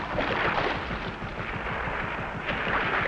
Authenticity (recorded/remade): recorded